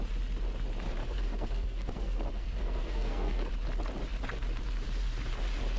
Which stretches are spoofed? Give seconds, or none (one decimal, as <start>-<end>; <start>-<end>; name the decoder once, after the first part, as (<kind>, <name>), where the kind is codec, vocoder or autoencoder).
1.0-3.5 (codec, SNAC)